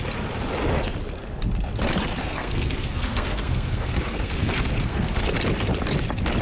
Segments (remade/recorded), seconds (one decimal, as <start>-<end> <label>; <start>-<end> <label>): 0.0-2.2 recorded; 2.2-5.2 remade; 5.2-6.4 recorded